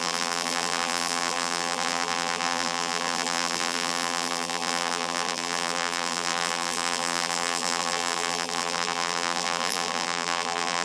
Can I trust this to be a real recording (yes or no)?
no